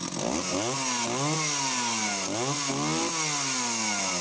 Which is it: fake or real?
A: real